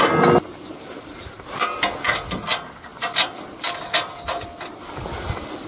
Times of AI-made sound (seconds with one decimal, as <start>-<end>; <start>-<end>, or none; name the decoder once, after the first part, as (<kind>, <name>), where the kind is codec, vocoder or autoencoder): none